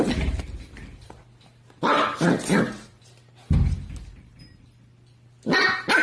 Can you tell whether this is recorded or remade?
recorded